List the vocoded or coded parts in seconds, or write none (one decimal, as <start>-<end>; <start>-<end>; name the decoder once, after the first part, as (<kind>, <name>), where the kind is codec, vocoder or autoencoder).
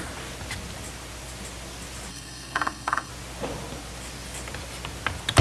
2.1-3.1 (codec, SNAC)